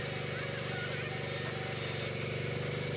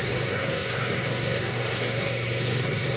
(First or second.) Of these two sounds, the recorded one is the first